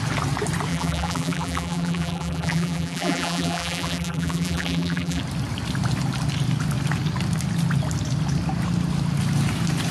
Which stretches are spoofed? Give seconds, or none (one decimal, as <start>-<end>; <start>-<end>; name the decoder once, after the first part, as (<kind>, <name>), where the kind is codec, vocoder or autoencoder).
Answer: 0.7-5.2 (vocoder, BigVGAN v2)